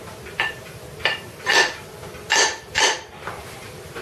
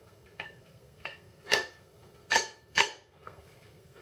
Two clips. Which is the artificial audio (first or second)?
second